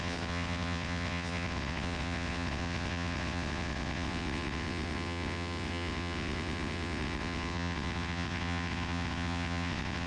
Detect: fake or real fake